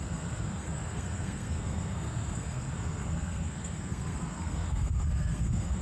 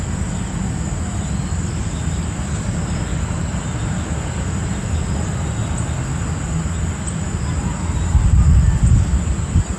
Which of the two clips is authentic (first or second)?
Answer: second